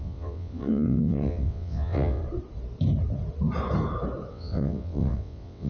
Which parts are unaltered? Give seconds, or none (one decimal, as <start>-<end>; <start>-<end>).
2.2-4.3